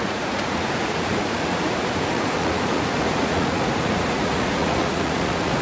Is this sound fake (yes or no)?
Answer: yes